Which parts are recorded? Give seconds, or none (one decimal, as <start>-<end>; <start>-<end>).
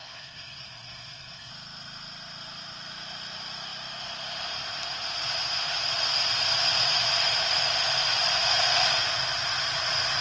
1.5-10.2